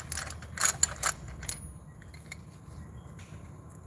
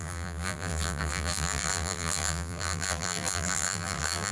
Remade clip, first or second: second